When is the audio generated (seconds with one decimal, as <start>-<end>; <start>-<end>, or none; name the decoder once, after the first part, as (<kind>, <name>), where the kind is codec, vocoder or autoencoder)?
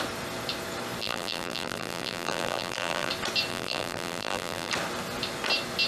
1.0-3.1 (vocoder, BigVGAN v2); 3.5-4.7